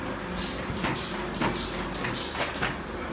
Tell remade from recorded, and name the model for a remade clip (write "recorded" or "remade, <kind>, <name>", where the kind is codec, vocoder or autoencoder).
recorded